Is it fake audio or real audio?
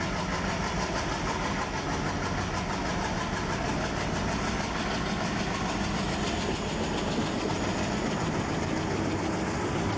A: real